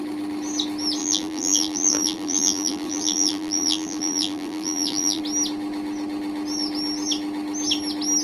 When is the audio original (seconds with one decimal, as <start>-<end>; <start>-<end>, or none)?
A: 0.0-1.0; 5.2-8.2